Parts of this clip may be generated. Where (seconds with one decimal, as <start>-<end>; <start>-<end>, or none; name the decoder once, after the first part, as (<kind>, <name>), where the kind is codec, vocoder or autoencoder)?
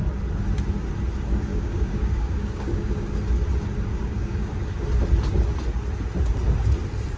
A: 1.5-3.1 (codec, DAC); 3.9-4.5